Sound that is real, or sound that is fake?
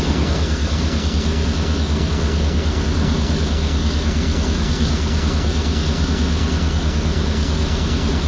fake